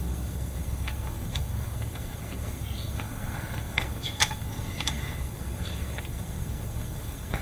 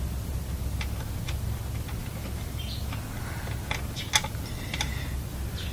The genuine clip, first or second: second